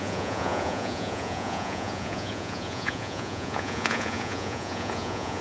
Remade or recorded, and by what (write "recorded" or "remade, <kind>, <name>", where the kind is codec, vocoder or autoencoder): remade, vocoder, Vocos